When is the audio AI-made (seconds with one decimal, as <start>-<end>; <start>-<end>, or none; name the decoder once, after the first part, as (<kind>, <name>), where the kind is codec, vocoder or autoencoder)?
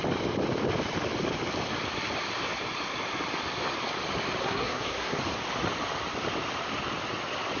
4.4-5.2 (codec, SNAC)